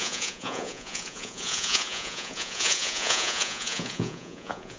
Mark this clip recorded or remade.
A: remade